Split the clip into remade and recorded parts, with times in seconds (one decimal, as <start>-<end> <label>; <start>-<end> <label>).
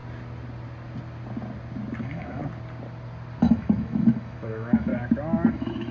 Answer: 0.0-2.0 recorded; 2.0-2.4 remade; 2.4-3.4 recorded; 3.4-4.9 remade; 4.9-5.5 recorded; 5.5-5.9 remade